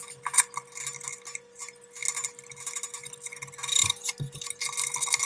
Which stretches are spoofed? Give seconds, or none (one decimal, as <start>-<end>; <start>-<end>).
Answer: none